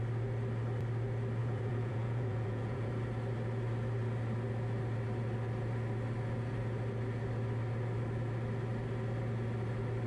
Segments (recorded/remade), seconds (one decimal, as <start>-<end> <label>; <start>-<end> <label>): 0.0-1.4 recorded; 1.4-2.9 remade; 2.9-10.1 recorded